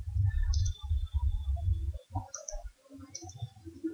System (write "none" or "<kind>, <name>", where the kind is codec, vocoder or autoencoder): none